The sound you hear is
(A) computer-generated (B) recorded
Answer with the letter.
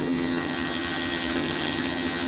A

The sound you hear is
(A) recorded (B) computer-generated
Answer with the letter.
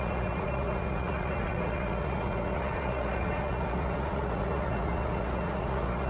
B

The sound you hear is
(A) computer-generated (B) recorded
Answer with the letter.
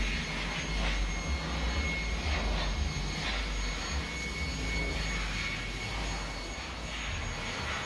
B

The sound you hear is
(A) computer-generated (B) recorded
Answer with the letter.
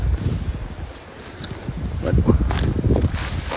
B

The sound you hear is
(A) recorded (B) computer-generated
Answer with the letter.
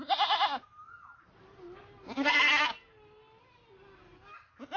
A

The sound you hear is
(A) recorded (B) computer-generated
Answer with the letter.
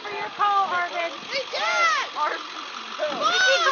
A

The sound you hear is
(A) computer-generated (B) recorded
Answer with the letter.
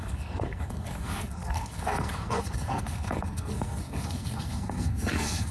A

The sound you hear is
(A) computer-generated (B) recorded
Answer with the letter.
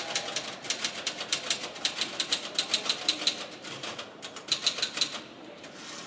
B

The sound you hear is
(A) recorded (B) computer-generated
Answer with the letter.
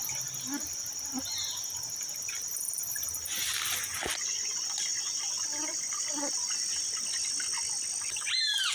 A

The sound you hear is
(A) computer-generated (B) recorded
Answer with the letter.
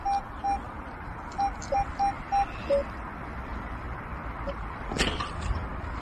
B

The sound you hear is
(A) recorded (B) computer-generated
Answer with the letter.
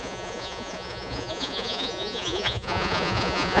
B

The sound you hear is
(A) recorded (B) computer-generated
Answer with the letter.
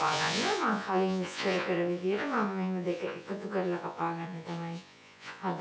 B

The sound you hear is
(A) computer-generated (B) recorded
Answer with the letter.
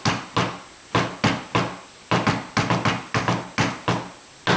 B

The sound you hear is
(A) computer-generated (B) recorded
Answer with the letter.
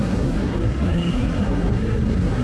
A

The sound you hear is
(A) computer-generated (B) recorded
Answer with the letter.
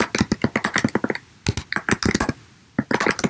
B